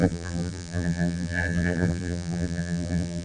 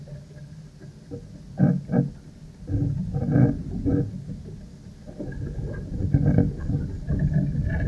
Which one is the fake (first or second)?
first